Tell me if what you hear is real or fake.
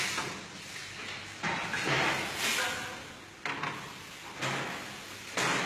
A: real